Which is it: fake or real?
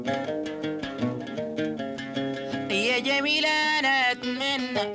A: real